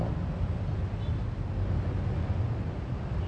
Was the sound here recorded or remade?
recorded